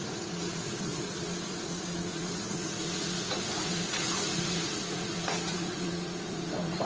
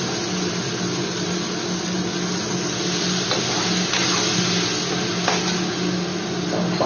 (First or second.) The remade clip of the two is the first